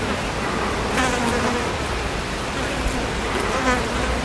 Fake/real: real